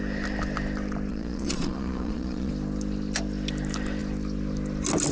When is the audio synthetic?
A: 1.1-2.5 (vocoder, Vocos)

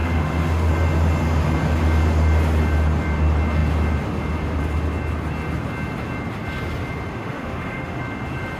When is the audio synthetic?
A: 0.0-0.7 (autoencoder, DAC-VAE); 7.1-8.0

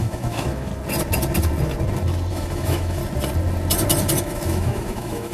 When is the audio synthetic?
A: 0.0-0.7 (autoencoder, DAC-VAE); 2.3-3.0; 4.2-5.3

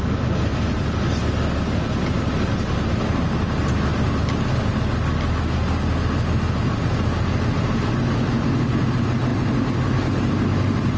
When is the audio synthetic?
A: none

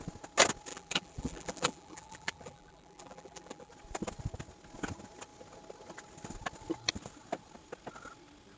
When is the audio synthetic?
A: 0.7-3.7 (vocoder, BigVGAN v2)

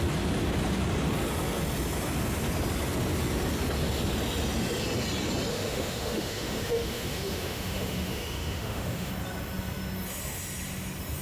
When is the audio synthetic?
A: 5.5-9.1 (autoencoder, DAC-VAE)